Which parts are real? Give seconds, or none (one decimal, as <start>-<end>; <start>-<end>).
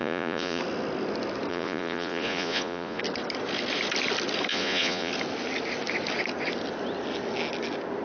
0.6-1.5; 3.0-4.5; 5.1-8.0